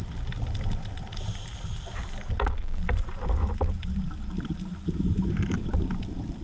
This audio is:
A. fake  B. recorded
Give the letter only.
B